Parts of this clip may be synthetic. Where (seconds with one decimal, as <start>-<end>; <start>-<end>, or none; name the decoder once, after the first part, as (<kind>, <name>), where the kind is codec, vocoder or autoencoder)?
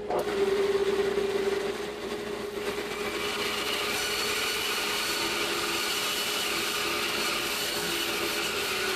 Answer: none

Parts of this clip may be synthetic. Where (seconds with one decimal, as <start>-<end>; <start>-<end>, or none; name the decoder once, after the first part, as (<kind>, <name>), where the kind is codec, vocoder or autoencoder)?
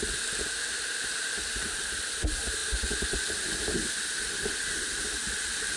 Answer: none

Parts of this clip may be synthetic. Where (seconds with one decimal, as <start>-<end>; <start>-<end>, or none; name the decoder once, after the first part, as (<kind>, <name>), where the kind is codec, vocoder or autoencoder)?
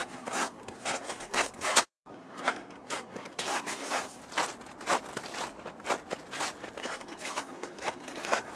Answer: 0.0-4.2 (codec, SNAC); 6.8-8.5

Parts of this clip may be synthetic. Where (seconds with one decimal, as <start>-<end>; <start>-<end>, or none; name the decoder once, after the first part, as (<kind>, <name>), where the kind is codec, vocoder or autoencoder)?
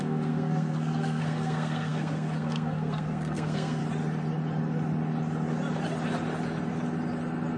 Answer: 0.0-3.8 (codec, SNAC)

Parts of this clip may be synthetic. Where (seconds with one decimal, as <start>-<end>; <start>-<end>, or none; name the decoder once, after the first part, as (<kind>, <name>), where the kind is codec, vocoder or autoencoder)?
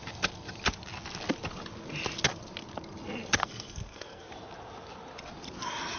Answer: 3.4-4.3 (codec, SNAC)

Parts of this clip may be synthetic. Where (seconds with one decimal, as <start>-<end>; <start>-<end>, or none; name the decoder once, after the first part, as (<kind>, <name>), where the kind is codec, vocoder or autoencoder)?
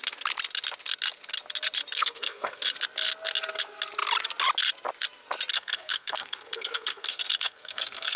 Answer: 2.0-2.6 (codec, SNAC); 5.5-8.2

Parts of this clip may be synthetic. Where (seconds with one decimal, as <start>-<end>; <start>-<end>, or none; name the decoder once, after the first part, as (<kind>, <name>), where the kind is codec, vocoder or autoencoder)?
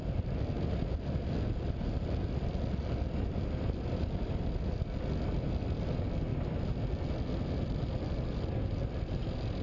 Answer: none